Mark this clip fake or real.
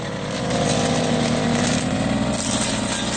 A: real